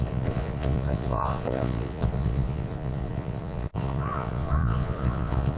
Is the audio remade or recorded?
remade